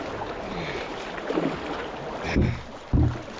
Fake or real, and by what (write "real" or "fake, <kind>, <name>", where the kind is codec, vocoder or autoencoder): real